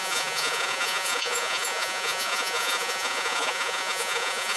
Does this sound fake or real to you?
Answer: fake